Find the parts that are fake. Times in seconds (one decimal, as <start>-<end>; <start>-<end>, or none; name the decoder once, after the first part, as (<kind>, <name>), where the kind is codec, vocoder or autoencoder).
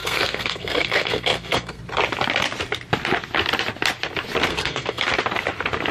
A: 0.0-1.8 (codec, SNAC); 4.5-5.0